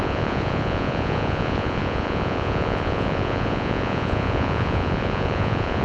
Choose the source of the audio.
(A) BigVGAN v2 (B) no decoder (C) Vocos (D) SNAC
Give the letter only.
C